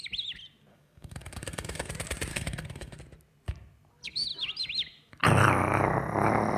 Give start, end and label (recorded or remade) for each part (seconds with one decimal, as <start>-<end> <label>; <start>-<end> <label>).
0.0-0.7 recorded; 0.7-1.9 remade; 1.9-2.3 recorded; 2.3-3.0 remade; 3.0-6.6 recorded